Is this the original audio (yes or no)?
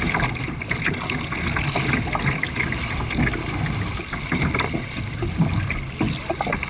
yes